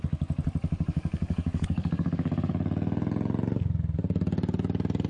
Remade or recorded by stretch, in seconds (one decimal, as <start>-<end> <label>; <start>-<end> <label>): 0.0-0.6 recorded; 0.6-2.5 remade; 2.5-5.1 recorded